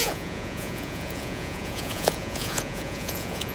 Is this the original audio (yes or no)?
no